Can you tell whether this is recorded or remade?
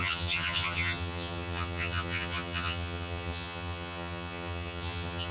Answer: remade